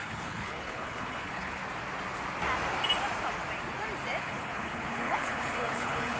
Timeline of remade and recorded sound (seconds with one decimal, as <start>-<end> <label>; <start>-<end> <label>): 0.0-1.6 remade; 1.6-4.2 recorded; 4.2-6.2 remade